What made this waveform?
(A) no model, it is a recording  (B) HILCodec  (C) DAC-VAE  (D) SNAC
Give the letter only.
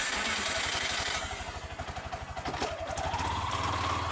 A